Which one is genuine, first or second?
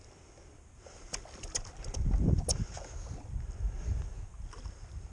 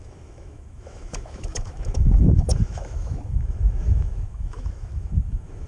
first